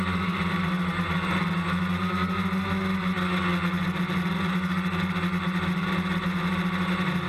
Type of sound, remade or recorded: recorded